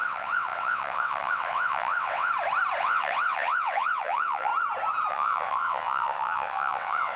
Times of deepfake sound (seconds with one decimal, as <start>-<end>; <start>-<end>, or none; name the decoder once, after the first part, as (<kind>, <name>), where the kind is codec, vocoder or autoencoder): 0.0-2.3 (vocoder, WaveNeXt); 2.8-4.5; 5.1-7.2